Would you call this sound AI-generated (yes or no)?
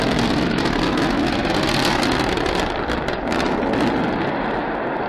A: no